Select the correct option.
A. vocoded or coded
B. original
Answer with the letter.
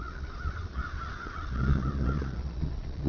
A